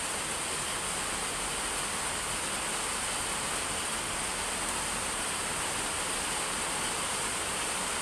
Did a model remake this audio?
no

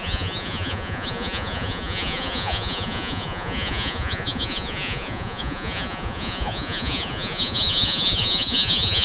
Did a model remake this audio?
yes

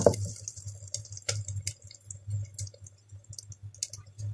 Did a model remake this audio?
no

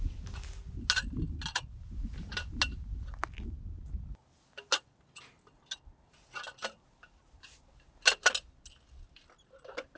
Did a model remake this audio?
no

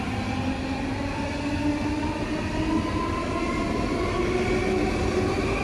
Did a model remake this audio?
no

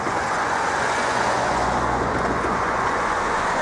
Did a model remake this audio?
yes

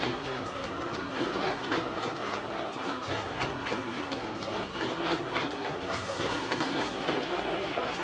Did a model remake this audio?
yes